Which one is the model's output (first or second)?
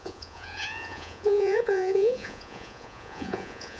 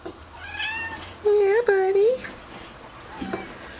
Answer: first